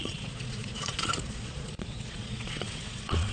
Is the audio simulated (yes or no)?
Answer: yes